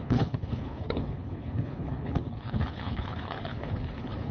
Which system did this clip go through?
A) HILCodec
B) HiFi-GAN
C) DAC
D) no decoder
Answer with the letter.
A